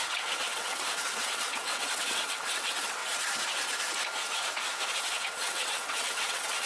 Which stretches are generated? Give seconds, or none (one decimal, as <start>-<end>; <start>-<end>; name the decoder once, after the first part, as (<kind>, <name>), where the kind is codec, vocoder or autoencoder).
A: 0.0-3.0 (vocoder, WaveNeXt); 5.0-6.7